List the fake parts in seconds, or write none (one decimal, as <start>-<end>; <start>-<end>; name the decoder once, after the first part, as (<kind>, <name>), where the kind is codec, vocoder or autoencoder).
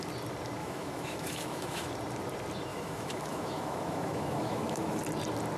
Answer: 0.6-1.9 (autoencoder, DAC-VAE); 2.7-5.0